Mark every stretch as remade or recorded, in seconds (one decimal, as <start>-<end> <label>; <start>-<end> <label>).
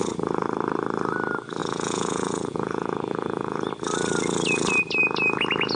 0.0-1.6 recorded; 1.6-3.7 remade; 3.7-5.8 recorded